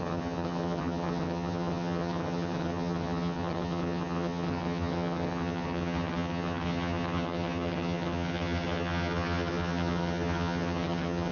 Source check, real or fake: fake